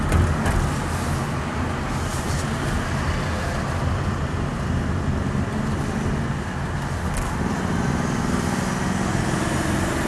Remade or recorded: recorded